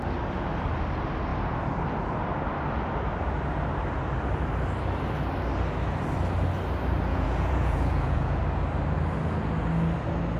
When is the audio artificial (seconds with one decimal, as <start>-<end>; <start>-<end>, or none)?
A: 7.1-8.4